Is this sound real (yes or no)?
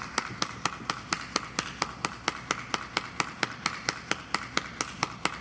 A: yes